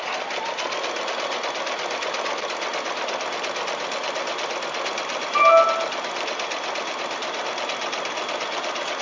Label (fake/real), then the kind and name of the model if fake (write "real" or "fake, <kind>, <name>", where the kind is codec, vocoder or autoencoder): real